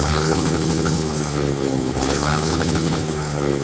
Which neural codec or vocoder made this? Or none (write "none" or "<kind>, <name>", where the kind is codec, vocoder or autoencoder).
codec, HILCodec